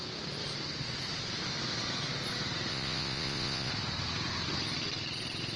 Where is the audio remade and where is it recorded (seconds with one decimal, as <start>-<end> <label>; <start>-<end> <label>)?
0.0-2.7 recorded; 2.7-3.7 remade; 3.7-5.6 recorded